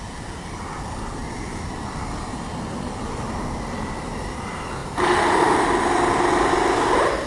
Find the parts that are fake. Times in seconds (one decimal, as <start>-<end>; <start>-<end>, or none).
4.8-5.7